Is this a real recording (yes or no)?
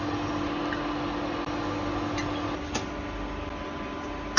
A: yes